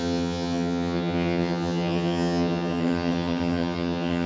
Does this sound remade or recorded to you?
remade